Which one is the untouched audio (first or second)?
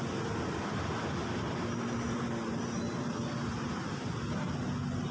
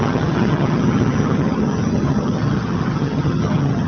first